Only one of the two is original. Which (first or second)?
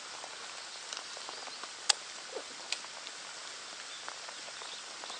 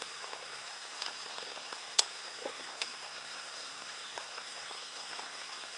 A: first